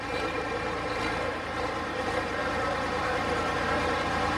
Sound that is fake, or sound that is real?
fake